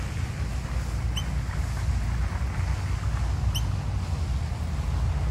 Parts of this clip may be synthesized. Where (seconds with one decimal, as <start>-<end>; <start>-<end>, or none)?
none